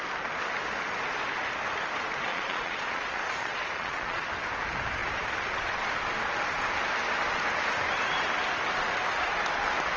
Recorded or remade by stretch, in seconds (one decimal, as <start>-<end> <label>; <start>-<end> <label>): 0.0-2.3 recorded; 2.3-4.3 remade; 4.3-10.0 recorded